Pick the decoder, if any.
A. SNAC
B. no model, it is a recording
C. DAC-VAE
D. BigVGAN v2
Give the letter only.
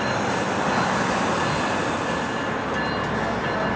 B